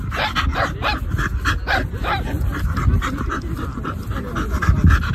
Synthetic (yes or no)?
no